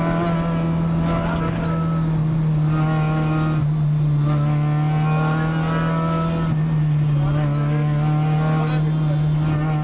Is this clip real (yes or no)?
yes